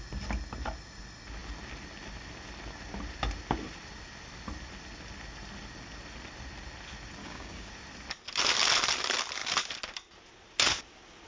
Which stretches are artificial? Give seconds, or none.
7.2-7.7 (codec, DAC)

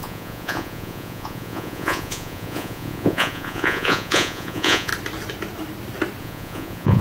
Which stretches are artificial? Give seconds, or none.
0.0-4.9 (vocoder, Vocos); 6.2-7.0

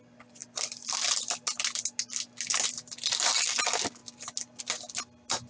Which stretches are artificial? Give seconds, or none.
none